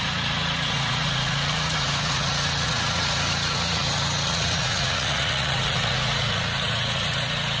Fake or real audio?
fake